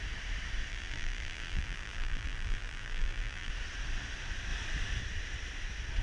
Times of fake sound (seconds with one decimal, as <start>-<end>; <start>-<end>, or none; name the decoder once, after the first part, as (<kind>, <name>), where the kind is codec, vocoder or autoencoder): 0.7-3.5 (vocoder, BigVGAN v2)